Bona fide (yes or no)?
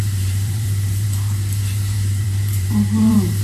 no